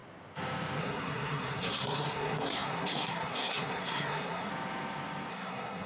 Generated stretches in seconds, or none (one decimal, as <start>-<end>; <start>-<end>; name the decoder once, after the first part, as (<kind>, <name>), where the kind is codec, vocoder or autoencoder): 0.8-4.5 (codec, SNAC); 5.3-5.9

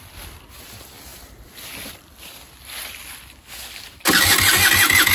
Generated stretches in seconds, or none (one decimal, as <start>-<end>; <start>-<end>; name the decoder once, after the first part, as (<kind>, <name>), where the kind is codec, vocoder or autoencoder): none